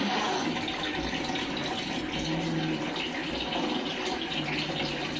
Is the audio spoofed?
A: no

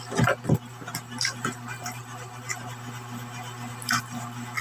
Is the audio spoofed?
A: no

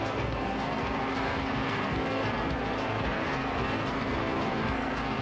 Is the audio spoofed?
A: yes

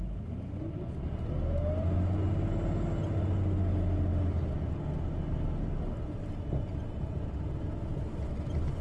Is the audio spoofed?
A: no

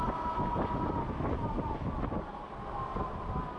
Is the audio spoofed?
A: no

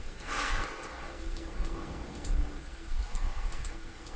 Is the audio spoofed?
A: yes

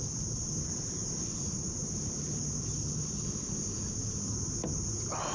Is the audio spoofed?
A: no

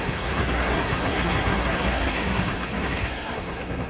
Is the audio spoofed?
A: yes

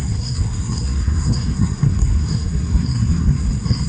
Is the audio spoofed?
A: yes